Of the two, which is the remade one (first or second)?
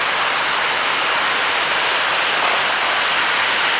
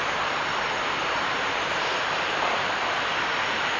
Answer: second